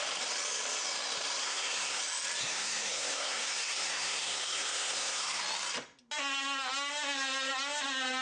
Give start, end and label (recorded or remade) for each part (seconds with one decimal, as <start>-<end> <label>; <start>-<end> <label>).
0.0-1.4 recorded; 1.4-2.0 remade; 2.0-2.4 recorded; 2.4-5.4 remade; 5.4-8.2 recorded